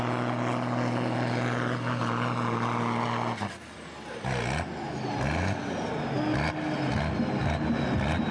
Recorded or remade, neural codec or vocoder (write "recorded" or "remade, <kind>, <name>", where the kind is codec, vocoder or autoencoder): recorded